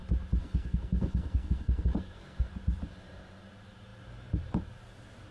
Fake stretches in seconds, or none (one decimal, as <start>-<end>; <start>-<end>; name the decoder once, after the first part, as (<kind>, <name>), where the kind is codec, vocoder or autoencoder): 0.4-2.5 (codec, SNAC)